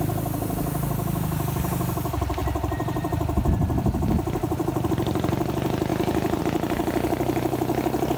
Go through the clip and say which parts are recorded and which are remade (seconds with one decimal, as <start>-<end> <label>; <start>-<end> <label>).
0.0-8.2 recorded